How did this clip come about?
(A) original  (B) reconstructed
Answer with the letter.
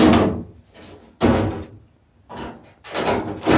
A